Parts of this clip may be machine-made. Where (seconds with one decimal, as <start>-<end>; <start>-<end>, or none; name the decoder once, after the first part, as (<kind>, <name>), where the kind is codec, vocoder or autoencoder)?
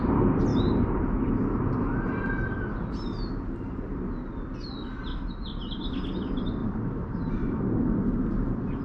0.5-1.1 (vocoder, BigVGAN v2); 6.6-7.6